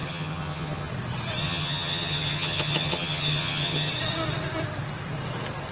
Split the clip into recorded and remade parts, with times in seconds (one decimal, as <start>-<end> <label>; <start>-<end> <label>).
0.0-0.9 remade; 0.9-1.4 recorded; 1.4-3.9 remade; 3.9-5.7 recorded